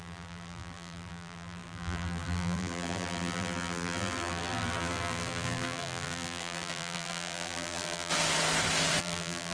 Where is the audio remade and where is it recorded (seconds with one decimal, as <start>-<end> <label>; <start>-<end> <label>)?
0.0-8.1 remade; 8.1-9.0 recorded; 9.0-9.5 remade